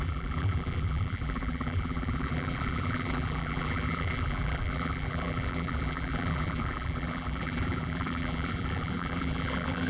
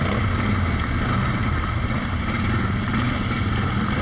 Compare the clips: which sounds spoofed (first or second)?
first